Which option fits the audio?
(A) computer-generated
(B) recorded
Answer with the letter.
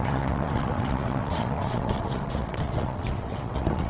A